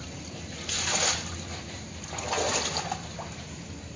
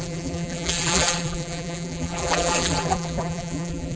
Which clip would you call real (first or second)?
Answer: first